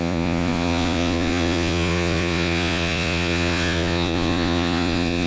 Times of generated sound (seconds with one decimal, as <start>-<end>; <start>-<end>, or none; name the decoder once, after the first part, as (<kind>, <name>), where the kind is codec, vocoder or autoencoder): 0.0-5.3 (vocoder, Vocos)